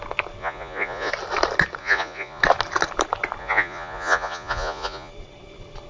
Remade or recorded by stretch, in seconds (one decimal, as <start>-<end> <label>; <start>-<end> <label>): 0.0-0.4 recorded; 0.4-1.1 remade; 1.1-1.8 recorded; 1.8-2.4 remade; 2.4-3.4 recorded; 3.4-5.1 remade; 5.1-5.9 recorded